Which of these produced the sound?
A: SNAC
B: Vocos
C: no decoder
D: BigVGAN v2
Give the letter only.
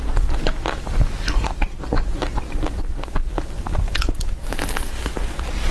C